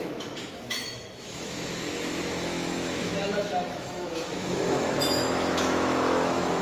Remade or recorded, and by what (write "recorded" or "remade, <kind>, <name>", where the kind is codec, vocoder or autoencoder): remade, autoencoder, DAC-VAE